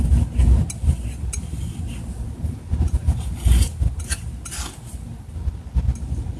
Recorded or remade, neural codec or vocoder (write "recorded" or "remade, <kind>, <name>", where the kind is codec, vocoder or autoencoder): recorded